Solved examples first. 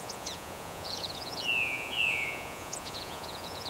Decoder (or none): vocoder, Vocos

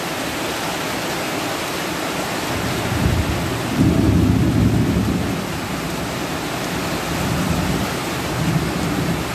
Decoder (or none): none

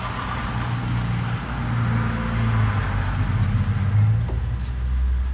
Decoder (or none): none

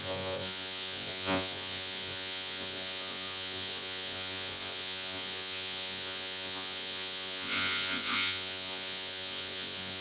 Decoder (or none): vocoder, Vocos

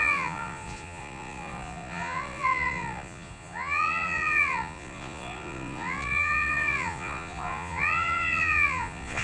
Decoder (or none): vocoder, Vocos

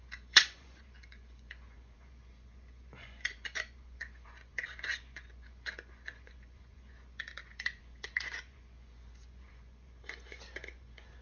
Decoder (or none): vocoder, Vocos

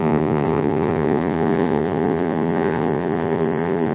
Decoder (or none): vocoder, Vocos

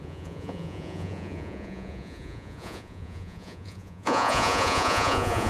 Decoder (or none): vocoder, Vocos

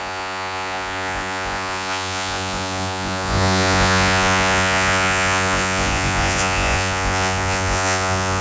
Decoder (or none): vocoder, Vocos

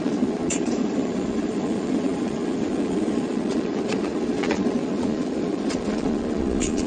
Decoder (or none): vocoder, Vocos